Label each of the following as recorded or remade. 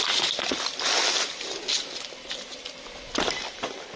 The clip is recorded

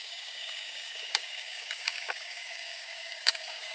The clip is remade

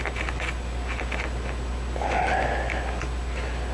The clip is recorded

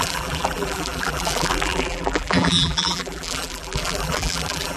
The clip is remade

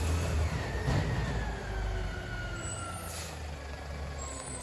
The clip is recorded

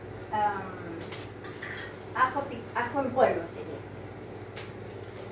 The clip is recorded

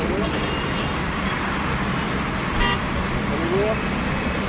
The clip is recorded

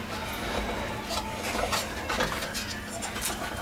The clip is recorded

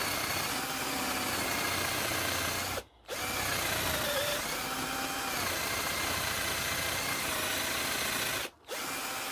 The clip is recorded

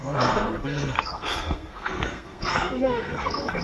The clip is remade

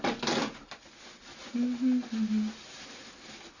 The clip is recorded